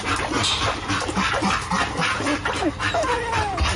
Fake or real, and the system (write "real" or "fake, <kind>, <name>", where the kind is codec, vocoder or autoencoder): real